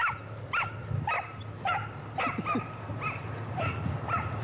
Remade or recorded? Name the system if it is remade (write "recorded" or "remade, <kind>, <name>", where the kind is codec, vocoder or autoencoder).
recorded